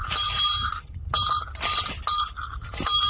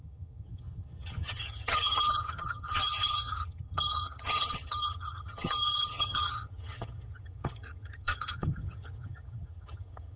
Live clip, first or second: first